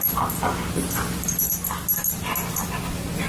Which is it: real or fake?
real